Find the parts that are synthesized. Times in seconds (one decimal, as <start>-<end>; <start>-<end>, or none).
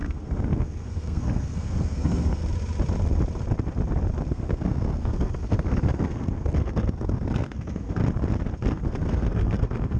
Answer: 0.0-2.4; 4.3-8.0; 8.7-10.0